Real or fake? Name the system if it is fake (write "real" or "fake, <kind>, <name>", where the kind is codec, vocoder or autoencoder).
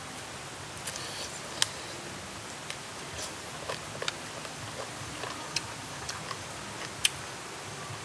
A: real